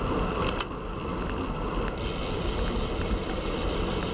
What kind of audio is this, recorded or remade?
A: recorded